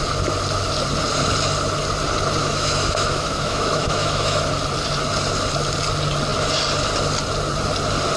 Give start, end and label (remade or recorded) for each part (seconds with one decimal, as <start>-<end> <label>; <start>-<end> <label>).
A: 0.0-2.4 recorded; 2.4-4.4 remade; 4.4-8.2 recorded